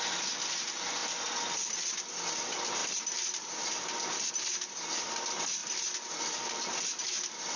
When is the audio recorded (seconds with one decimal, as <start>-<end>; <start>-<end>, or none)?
0.0-7.6